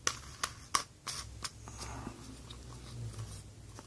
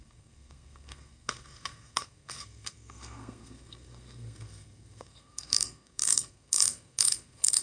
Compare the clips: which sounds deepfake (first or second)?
second